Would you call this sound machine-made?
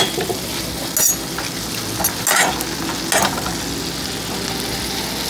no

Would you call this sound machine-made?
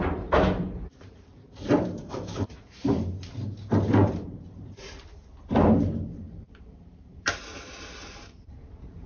yes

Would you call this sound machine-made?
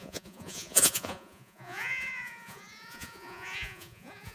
yes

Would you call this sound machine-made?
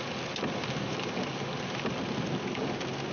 no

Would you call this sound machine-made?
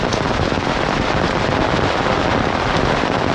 no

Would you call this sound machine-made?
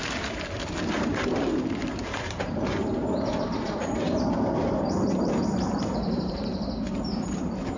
yes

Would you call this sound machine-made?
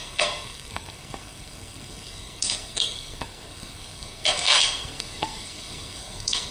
yes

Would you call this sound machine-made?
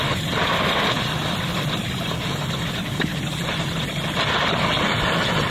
yes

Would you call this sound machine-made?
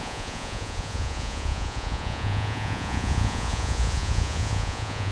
yes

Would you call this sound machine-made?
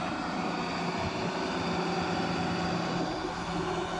no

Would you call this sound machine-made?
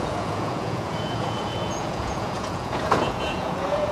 yes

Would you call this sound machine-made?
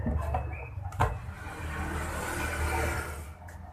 no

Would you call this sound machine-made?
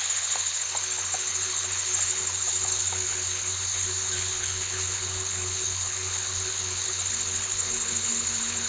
yes